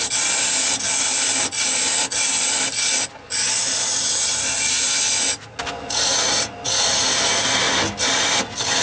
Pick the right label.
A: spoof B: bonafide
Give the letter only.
B